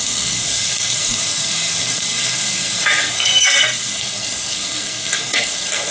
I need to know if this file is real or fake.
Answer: fake